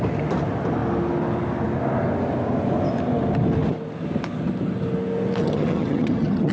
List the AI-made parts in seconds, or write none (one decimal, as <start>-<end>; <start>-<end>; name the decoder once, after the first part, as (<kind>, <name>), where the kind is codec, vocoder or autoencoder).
5.4-6.5 (vocoder, HiFi-GAN)